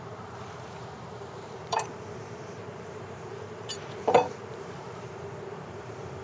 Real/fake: fake